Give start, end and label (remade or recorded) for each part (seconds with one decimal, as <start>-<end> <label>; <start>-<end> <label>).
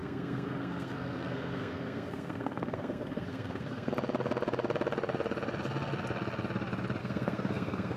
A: 0.0-3.9 remade; 3.9-7.0 recorded; 7.0-8.0 remade